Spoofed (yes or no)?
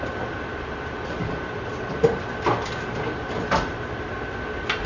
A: no